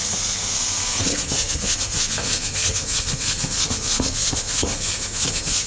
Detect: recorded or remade remade